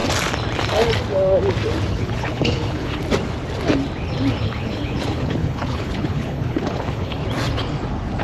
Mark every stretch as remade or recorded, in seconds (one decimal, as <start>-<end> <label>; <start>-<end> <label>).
0.0-1.9 recorded; 1.9-3.0 remade; 3.0-4.4 recorded; 4.4-7.2 remade; 7.2-8.2 recorded